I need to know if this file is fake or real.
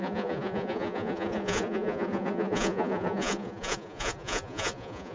fake